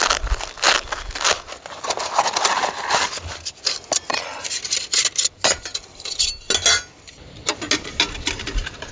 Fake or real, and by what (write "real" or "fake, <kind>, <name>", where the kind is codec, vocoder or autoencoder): real